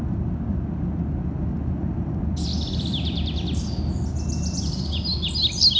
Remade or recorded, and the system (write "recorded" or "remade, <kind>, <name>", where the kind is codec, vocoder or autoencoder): recorded